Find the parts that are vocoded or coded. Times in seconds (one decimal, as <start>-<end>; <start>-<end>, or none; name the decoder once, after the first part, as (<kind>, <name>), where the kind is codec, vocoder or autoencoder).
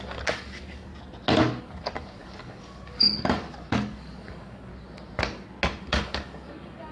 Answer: 0.0-0.9 (codec, DAC); 1.6-4.7; 5.8-6.9